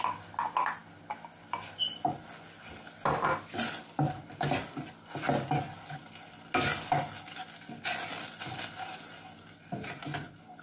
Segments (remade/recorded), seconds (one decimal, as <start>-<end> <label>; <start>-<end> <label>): 0.0-10.6 recorded

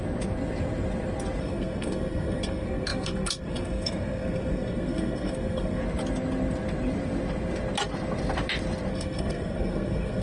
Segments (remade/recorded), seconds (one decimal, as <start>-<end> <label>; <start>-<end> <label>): 0.0-1.4 recorded; 1.4-5.8 remade; 5.8-8.9 recorded; 8.9-10.2 remade

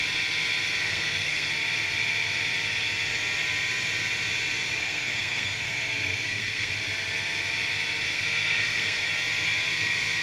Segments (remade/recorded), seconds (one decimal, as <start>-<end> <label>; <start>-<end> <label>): 0.0-0.8 recorded; 0.8-1.5 remade; 1.5-4.8 recorded; 4.8-6.7 remade; 6.7-8.1 recorded; 8.1-9.1 remade; 9.1-10.2 recorded

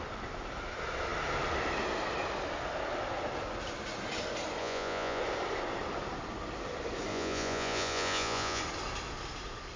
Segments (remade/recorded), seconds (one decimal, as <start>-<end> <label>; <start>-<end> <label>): 0.0-4.6 recorded; 4.6-5.2 remade; 5.2-7.1 recorded; 7.1-8.6 remade; 8.6-9.8 recorded